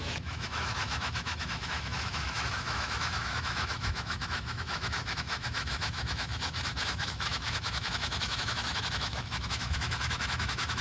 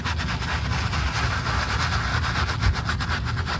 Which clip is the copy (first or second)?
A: first